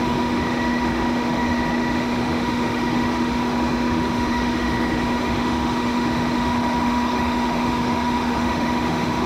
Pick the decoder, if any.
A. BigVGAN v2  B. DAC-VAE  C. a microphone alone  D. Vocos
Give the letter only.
B